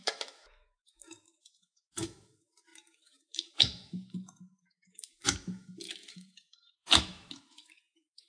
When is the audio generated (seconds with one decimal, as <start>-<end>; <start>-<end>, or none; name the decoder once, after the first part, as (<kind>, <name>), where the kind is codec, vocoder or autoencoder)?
0.0-8.3 (autoencoder, DAC-VAE)